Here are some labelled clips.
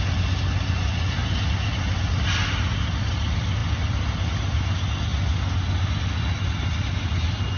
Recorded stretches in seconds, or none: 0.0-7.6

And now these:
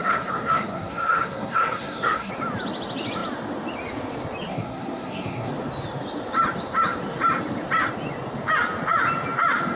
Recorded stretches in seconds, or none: 2.3-4.5; 5.5-9.8

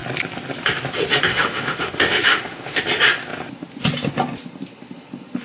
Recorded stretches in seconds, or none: 0.0-1.3; 2.8-5.4

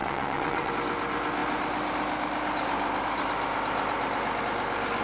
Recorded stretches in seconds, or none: 0.7-5.0

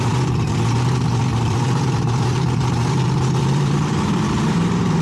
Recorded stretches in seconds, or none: none

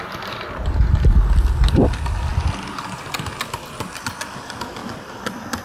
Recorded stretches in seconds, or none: 0.0-5.6

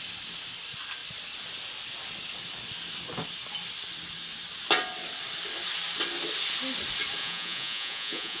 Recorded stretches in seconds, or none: 0.0-7.2

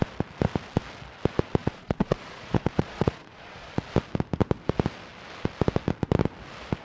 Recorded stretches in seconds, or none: 0.0-1.6; 3.7-6.8